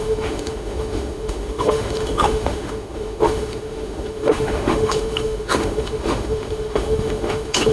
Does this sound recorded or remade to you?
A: remade